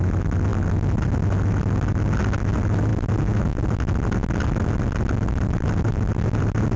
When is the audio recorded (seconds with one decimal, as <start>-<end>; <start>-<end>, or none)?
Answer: 0.0-6.8